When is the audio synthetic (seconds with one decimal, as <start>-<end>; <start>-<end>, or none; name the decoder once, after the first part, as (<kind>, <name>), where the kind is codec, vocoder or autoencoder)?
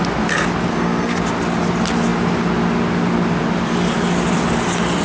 0.7-1.2 (codec, SNAC)